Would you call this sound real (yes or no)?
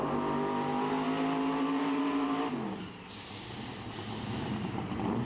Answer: no